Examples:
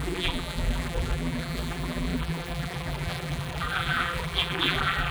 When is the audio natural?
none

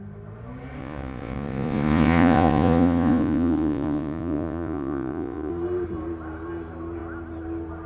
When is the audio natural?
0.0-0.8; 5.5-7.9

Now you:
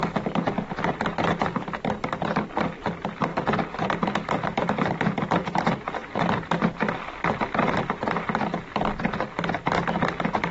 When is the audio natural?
0.0-3.3; 5.6-6.0; 6.6-10.5

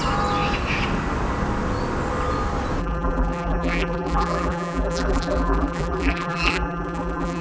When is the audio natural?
0.0-2.8

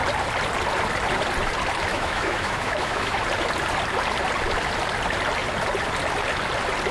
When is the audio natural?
0.0-1.9; 3.2-6.9

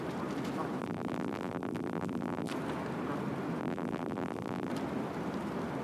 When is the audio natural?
0.0-0.8; 2.5-3.6; 4.7-5.8